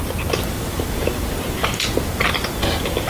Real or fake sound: real